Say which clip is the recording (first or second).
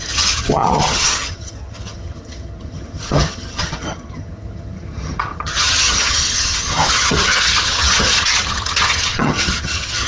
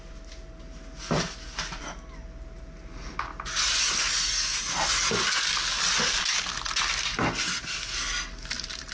second